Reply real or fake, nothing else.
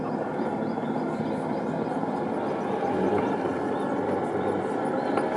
real